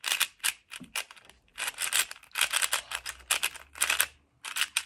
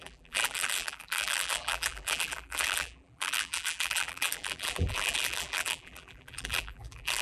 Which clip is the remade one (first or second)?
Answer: second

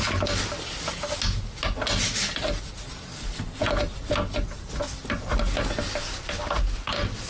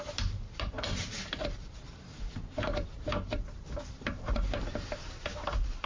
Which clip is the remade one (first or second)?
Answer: second